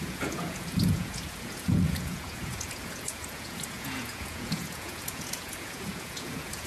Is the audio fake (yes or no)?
yes